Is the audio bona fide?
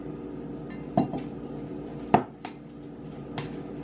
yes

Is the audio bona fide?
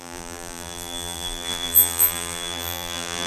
no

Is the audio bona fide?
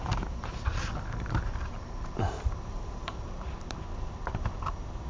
no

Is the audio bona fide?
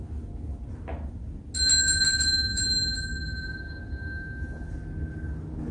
yes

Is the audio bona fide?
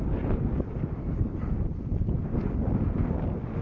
yes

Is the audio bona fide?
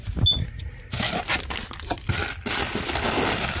yes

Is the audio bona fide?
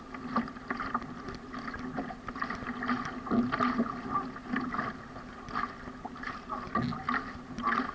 yes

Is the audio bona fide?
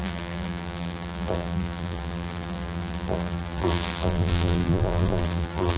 no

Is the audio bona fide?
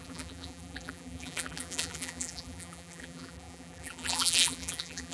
no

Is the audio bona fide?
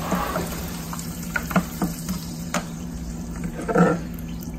no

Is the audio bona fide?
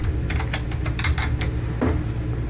yes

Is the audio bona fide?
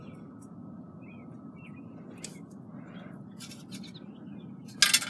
yes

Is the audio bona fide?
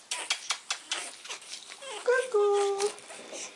yes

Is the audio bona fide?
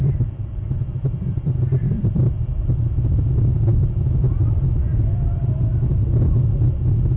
yes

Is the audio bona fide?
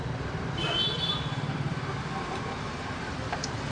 no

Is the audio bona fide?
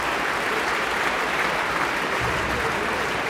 no